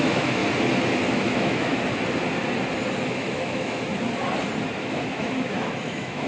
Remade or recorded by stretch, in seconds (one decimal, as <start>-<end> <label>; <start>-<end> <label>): 0.0-0.4 remade; 0.4-1.1 recorded; 1.1-1.7 remade; 1.7-3.1 recorded; 3.1-3.9 remade; 3.9-4.7 recorded; 4.7-6.3 remade